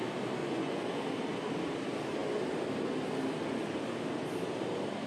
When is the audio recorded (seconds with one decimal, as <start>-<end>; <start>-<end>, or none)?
0.0-0.4; 1.0-5.1